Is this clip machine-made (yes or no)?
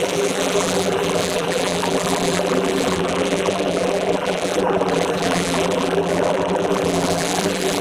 yes